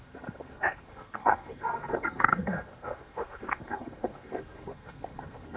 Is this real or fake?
fake